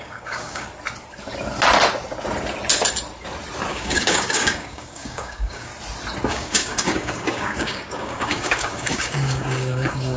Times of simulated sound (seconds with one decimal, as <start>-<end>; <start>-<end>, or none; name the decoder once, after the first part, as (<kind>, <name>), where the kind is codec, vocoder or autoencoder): 0.0-0.7 (codec, DAC); 3.7-5.7; 6.3-10.2